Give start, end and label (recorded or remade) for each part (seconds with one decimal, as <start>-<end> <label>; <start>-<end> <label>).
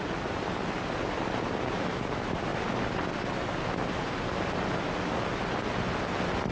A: 0.0-6.5 recorded